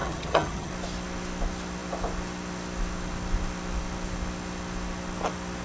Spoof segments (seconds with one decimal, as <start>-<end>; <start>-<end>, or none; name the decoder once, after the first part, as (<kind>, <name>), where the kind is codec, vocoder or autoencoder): 0.0-0.7 (vocoder, HiFi-GAN)